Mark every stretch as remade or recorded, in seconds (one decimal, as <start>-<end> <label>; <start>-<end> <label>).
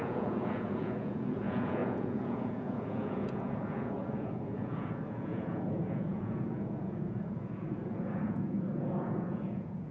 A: 0.0-9.9 remade